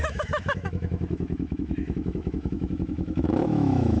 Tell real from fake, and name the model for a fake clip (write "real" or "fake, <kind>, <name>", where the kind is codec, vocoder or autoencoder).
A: fake, autoencoder, DAC-VAE